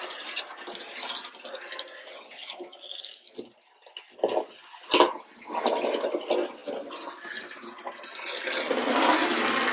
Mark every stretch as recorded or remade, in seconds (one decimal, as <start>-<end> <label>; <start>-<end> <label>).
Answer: 0.0-2.4 recorded; 2.4-3.3 remade; 3.3-9.7 recorded